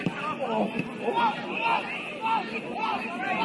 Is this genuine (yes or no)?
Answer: yes